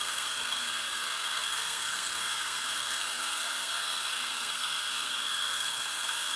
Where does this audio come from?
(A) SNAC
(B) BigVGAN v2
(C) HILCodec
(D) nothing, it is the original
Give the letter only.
A